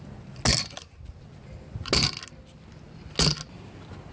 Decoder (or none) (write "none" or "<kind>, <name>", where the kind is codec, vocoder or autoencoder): none